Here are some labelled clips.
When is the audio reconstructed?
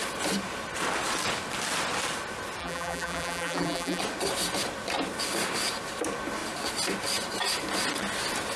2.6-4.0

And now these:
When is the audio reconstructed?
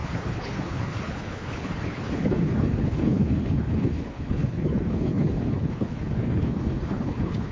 0.0-7.5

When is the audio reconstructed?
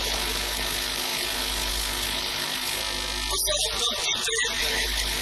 0.0-2.8; 4.6-5.2